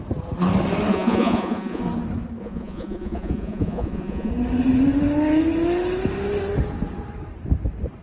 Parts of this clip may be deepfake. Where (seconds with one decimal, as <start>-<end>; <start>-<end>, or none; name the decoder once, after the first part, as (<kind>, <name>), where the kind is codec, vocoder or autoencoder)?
0.9-1.8 (vocoder, Vocos); 2.4-4.3